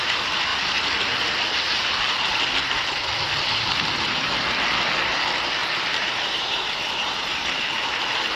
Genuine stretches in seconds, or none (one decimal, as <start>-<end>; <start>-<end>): 0.0-5.6; 7.7-8.4